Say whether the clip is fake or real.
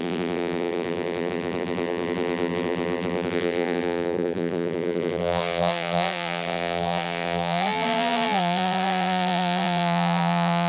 fake